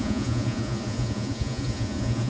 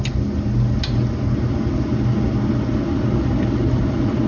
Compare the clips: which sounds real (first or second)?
second